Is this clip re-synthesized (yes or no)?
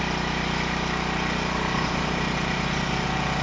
no